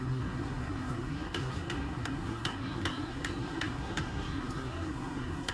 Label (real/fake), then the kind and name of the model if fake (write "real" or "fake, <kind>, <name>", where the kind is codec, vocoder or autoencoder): fake, codec, SNAC